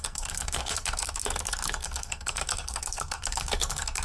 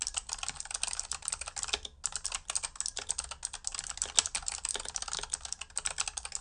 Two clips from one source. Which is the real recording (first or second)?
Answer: second